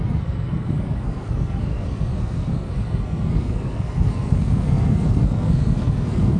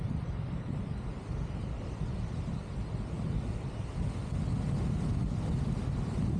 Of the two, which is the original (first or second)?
second